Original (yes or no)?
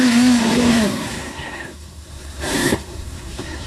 no